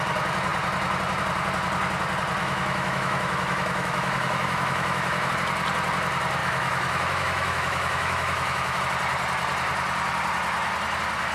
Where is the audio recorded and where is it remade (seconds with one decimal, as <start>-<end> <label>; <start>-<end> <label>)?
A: 0.0-2.4 recorded; 2.4-5.3 remade; 5.3-6.4 recorded; 6.4-8.8 remade; 8.8-11.3 recorded